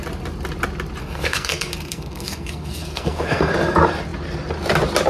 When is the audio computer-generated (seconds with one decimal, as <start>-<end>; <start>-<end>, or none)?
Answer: 1.0-3.5